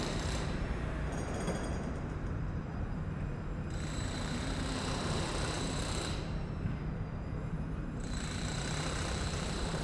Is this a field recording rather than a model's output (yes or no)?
no